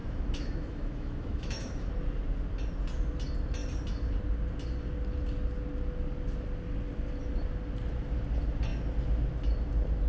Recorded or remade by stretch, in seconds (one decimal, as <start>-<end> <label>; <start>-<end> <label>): 0.0-1.9 remade; 1.9-10.1 recorded